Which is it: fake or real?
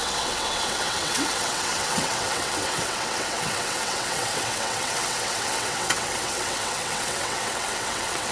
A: fake